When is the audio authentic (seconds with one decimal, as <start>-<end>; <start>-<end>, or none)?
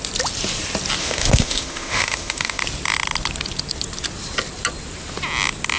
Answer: 0.0-1.0; 2.6-5.8